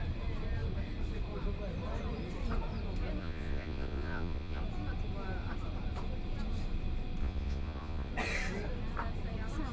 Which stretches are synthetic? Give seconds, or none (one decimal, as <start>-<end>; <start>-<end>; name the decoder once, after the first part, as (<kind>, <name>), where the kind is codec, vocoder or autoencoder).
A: 3.2-4.6 (vocoder, Vocos); 7.2-8.1